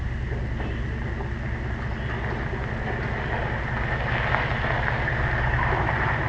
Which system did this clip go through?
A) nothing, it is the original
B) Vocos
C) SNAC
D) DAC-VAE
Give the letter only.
A